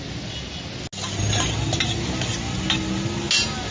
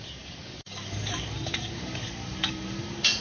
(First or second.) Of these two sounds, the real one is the first